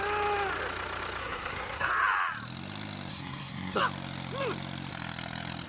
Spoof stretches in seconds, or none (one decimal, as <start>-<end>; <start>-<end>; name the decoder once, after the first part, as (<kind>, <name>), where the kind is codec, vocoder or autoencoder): 1.2-1.9 (codec, SNAC); 3.1-3.8